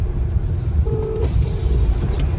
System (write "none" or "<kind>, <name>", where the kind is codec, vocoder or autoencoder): vocoder, BigVGAN v2